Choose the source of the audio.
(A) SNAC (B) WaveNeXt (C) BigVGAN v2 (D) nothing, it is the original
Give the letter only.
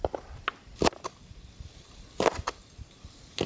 D